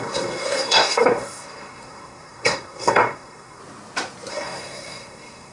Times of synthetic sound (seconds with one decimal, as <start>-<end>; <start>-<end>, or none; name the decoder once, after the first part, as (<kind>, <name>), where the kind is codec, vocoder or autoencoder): 0.0-3.6 (codec, SNAC); 4.3-5.5